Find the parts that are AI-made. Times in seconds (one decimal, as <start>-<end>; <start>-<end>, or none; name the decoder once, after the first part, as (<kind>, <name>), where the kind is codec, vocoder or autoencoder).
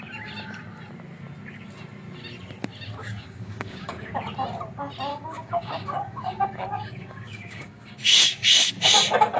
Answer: 3.0-4.1 (codec, DAC); 5.1-8.7